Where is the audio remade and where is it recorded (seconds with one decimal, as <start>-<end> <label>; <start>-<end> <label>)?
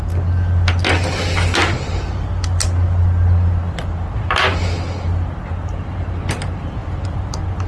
0.0-7.7 recorded